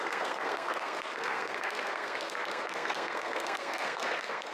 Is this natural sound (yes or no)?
no